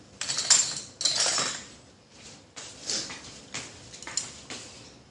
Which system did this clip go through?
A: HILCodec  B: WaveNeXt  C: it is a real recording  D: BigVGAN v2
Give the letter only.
C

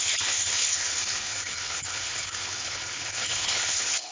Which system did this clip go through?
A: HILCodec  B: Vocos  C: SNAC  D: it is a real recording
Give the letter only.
A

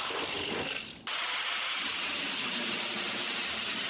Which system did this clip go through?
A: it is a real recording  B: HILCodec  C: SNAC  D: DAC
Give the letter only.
A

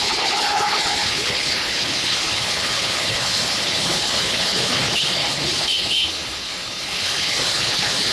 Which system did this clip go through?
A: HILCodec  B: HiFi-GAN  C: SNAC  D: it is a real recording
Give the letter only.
A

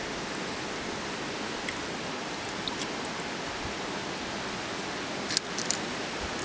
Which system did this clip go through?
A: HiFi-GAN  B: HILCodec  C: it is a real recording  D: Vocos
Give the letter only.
C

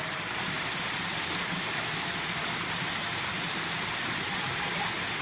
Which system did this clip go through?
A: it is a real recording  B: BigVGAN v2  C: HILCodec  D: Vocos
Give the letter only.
A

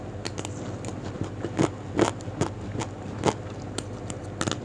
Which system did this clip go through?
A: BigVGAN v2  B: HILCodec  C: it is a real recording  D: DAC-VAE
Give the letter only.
C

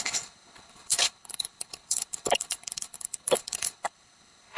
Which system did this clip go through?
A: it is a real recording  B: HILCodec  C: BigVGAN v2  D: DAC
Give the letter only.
B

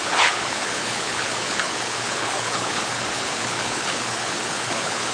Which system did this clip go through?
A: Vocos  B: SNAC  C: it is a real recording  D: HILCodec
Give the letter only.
D